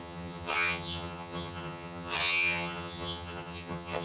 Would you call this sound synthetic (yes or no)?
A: yes